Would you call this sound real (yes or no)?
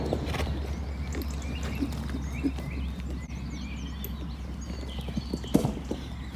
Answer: yes